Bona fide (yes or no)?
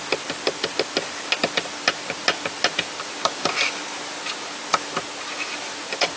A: yes